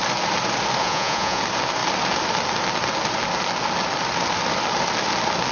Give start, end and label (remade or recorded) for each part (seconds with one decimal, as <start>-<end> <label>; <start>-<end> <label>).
0.0-0.8 recorded; 0.8-1.4 remade; 1.4-5.5 recorded